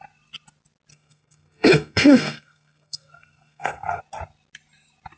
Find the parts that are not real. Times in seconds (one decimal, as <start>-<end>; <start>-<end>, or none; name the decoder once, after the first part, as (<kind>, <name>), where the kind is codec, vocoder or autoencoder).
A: 0.9-4.0 (codec, SNAC)